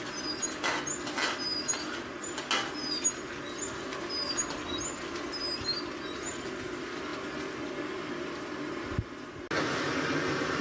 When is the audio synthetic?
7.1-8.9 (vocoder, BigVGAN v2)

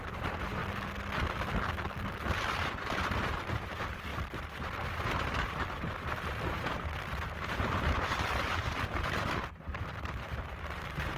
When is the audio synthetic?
0.0-0.6 (vocoder, BigVGAN v2); 2.5-11.2